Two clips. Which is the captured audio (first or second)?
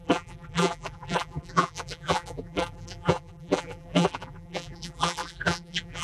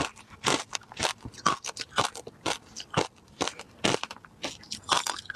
second